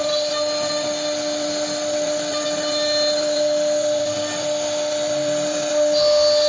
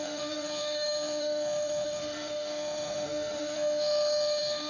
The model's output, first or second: second